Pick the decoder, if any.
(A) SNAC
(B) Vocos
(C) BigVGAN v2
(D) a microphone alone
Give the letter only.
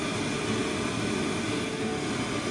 D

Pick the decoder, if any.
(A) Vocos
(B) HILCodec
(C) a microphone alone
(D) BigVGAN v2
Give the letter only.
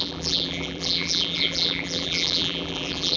D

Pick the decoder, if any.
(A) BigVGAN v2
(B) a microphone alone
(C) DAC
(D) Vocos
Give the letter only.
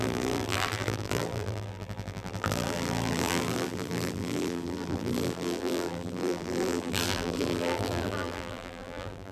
A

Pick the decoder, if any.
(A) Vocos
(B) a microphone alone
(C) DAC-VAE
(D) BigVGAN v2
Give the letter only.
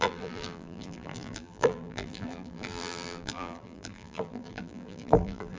D